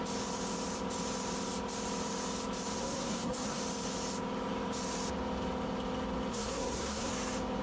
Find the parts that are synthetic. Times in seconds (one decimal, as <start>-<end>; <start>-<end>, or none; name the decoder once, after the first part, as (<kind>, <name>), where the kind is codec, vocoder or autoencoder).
2.8-3.6 (codec, SNAC); 6.3-7.1